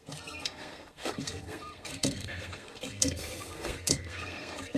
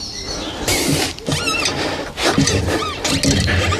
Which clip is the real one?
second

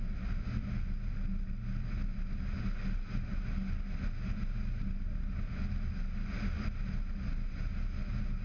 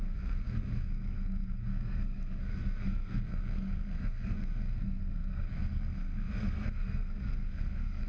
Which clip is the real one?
first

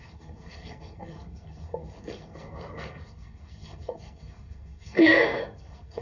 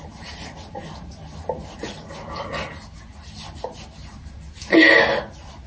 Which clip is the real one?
second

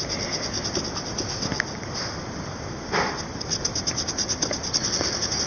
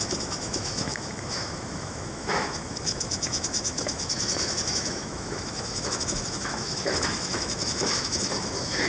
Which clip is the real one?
first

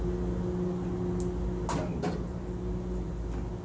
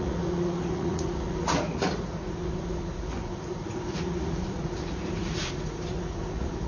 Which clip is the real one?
first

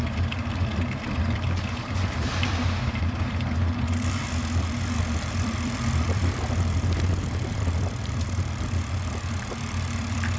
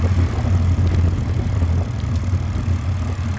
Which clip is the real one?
second